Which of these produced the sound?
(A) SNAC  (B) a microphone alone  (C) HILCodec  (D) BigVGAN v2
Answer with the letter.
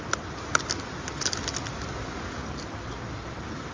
B